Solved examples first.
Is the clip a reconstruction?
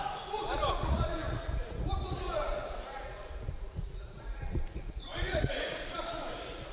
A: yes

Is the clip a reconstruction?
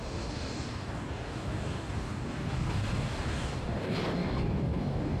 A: yes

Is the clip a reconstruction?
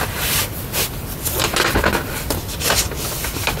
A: no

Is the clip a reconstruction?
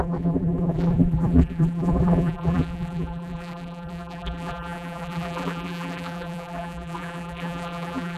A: yes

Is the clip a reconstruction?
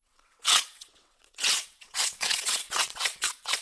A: yes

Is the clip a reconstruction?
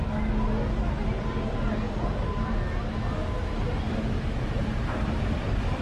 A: no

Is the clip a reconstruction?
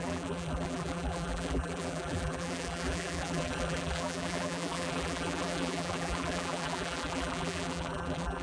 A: yes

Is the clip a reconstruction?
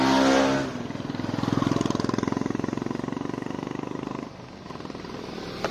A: no